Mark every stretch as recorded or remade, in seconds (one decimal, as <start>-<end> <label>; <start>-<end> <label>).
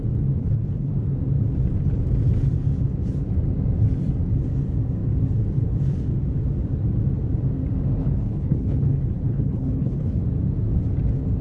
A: 0.0-0.4 recorded; 0.4-0.9 remade; 0.9-8.0 recorded; 8.0-10.2 remade; 10.2-11.4 recorded